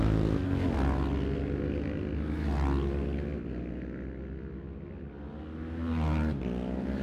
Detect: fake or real real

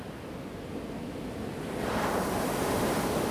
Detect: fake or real real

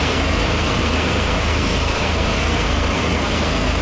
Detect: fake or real fake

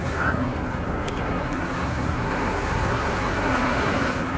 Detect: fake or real fake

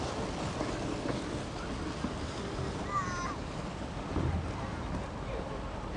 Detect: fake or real real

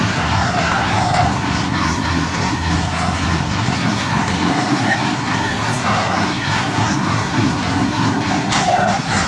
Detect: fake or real fake